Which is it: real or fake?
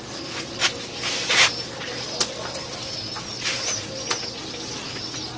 real